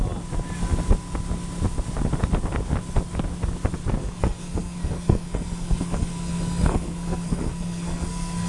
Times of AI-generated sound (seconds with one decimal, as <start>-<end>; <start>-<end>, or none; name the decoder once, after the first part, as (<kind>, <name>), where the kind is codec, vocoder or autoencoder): 4.0-8.5 (codec, SNAC)

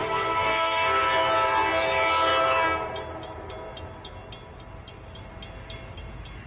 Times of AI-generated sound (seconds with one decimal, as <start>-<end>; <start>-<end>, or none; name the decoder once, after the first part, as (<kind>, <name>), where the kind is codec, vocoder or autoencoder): 0.0-1.0 (codec, SNAC)

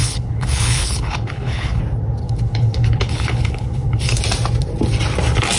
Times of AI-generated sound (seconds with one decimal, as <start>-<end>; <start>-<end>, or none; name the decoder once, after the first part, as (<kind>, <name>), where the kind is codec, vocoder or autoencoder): 0.0-1.8 (codec, HILCodec); 2.2-4.2